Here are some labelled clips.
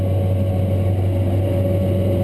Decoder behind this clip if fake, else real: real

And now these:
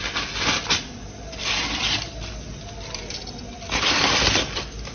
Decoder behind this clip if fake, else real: fake, vocoder, BigVGAN v2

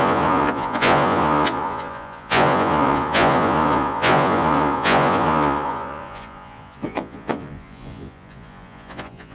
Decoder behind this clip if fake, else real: fake, vocoder, Vocos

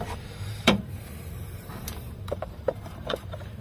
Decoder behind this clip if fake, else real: fake, vocoder, BigVGAN v2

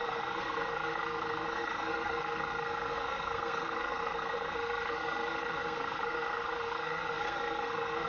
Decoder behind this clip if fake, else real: fake, codec, SNAC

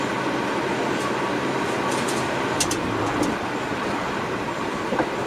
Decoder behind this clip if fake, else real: real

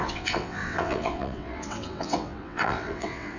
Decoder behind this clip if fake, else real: fake, vocoder, WaveNeXt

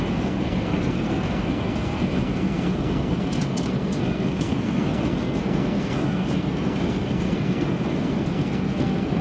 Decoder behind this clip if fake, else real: fake, codec, SNAC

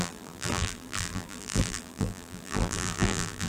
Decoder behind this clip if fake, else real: fake, vocoder, BigVGAN v2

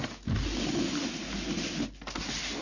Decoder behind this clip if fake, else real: real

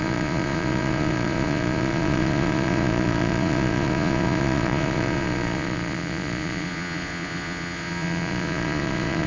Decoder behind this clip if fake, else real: fake, vocoder, Vocos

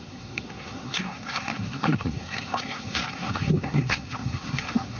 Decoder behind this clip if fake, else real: fake, codec, SNAC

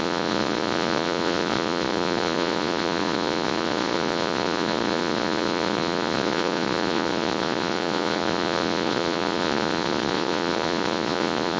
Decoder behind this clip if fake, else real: fake, vocoder, Vocos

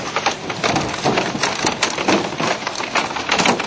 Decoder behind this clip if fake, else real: real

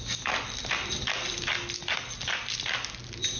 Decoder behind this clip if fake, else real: real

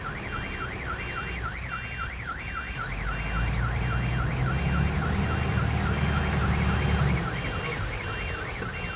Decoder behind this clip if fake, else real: real